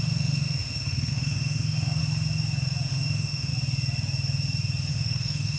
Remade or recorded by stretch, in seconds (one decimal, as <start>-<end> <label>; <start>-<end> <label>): 0.0-2.0 remade; 2.0-2.9 recorded; 2.9-3.5 remade; 3.5-4.9 recorded; 4.9-5.6 remade